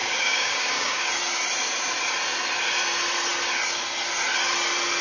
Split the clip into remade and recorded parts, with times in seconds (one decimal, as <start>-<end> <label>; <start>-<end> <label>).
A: 0.0-1.1 remade; 1.1-5.0 recorded